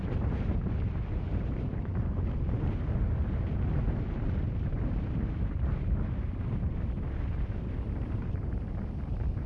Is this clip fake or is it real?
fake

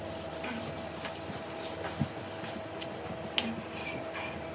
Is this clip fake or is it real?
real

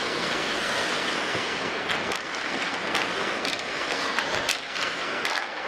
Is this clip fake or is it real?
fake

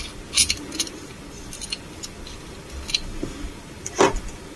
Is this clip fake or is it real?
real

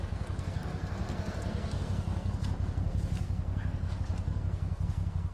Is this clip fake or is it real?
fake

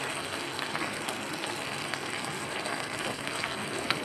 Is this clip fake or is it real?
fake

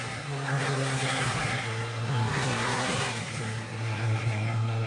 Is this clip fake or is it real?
fake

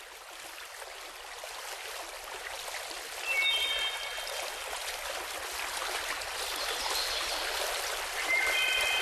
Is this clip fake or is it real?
real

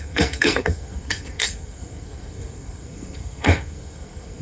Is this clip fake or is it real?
fake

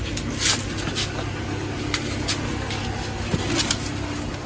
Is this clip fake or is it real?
real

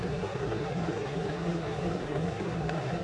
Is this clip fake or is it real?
fake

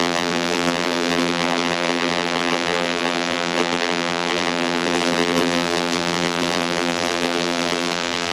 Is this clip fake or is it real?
fake